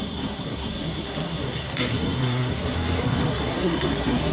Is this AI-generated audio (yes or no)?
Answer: yes